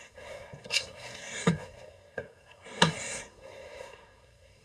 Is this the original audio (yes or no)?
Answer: no